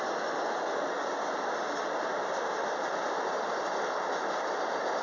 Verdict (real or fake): real